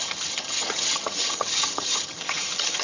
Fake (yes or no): yes